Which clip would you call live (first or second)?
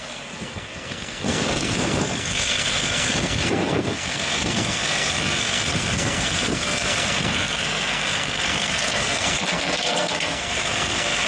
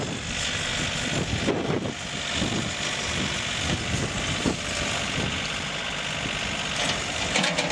second